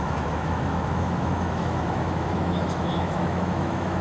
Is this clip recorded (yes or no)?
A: no